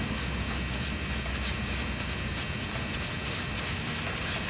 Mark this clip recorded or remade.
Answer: recorded